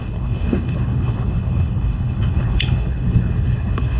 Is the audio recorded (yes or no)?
no